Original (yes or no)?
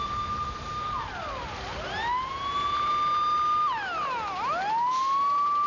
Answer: yes